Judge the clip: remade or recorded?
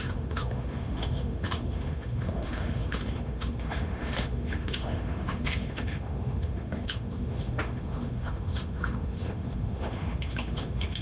remade